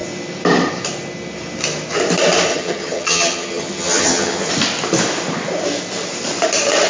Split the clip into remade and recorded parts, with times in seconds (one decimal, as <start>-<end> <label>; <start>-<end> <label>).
0.0-2.5 recorded; 2.5-4.5 remade; 4.5-6.9 recorded